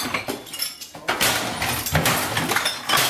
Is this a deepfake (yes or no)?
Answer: no